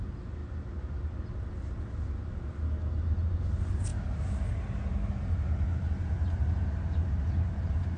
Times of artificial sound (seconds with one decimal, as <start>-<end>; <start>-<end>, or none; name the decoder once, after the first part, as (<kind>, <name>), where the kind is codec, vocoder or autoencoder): none